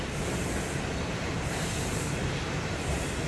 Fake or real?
fake